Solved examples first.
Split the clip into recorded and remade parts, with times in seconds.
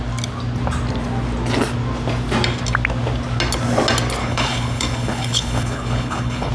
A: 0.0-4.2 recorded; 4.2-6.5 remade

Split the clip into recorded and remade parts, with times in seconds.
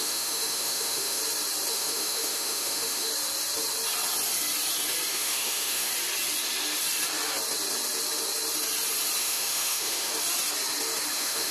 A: 0.0-1.2 remade; 1.2-1.7 recorded; 1.7-3.1 remade; 3.1-5.1 recorded; 5.1-5.9 remade; 5.9-9.2 recorded; 9.2-10.1 remade; 10.1-11.1 recorded; 11.1-11.5 remade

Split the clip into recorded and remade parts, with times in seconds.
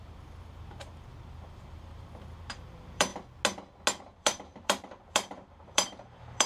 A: 0.0-3.1 remade; 3.1-4.0 recorded; 4.0-6.5 remade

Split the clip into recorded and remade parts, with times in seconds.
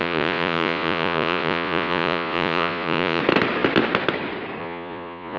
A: 0.0-3.2 remade; 3.2-4.6 recorded; 4.6-5.4 remade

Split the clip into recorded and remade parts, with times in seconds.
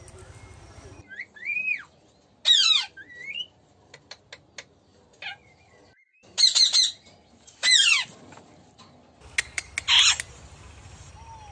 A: 0.0-11.5 recorded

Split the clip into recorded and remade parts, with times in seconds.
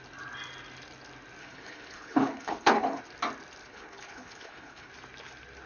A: 0.0-1.4 recorded; 1.4-3.0 remade; 3.0-3.7 recorded; 3.7-4.9 remade; 4.9-5.7 recorded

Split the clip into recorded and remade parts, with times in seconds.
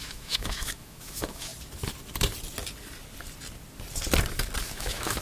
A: 0.0-1.5 remade; 1.5-4.6 recorded; 4.6-5.2 remade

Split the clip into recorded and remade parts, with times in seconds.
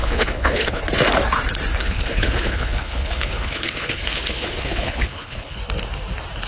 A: 0.0-0.8 remade; 0.8-1.8 recorded; 1.8-5.6 remade; 5.6-6.5 recorded